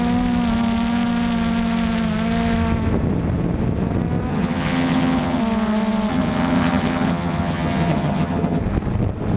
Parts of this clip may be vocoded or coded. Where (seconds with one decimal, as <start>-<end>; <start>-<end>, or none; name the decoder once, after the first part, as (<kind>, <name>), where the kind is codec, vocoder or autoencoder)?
4.3-5.4 (vocoder, HiFi-GAN); 6.1-8.6